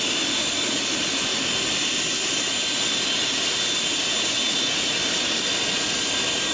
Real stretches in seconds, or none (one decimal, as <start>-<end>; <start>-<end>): 0.0-0.4; 0.9-6.5